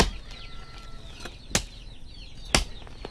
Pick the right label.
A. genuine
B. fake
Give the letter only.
A